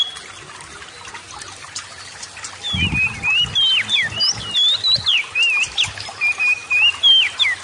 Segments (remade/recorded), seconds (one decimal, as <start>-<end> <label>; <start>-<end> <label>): 0.0-7.6 recorded